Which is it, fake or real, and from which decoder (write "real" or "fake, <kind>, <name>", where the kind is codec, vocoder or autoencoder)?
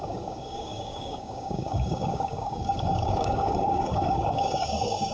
fake, codec, DAC